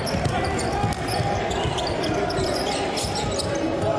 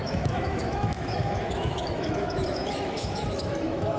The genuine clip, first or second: first